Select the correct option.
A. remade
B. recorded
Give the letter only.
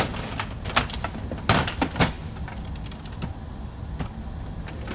B